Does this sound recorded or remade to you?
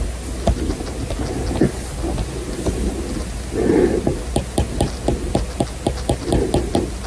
recorded